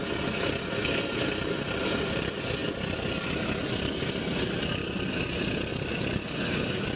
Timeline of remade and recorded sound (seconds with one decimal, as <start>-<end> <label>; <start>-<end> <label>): 0.0-7.0 recorded